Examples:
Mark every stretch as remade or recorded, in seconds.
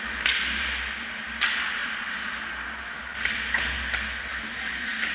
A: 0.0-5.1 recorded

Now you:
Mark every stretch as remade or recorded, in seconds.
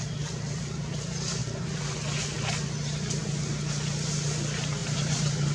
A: 0.0-4.8 recorded; 4.8-5.5 remade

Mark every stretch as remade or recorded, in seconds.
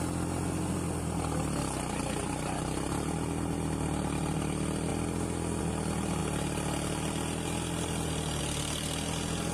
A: 0.0-9.5 recorded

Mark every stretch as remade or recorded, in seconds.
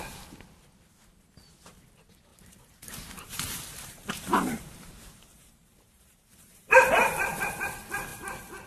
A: 0.0-2.3 recorded; 2.3-7.5 remade; 7.5-8.7 recorded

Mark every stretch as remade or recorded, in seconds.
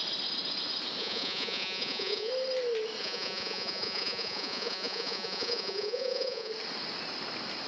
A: 0.0-1.0 recorded; 1.0-2.3 remade; 2.3-3.0 recorded; 3.0-6.5 remade; 6.5-7.7 recorded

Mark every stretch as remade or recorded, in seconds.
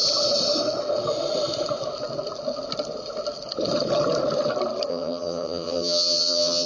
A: 0.0-4.9 recorded; 4.9-6.7 remade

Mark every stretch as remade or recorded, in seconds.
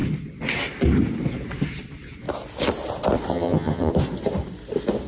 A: 0.0-3.3 recorded; 3.3-3.9 remade; 3.9-5.1 recorded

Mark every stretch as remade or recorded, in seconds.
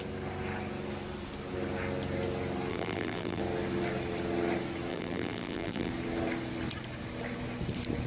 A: 0.0-2.7 recorded; 2.7-3.4 remade; 3.4-4.9 recorded; 4.9-5.9 remade; 5.9-8.1 recorded